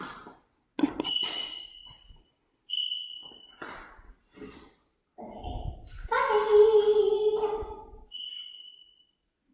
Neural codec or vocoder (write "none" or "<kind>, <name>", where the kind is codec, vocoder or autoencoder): none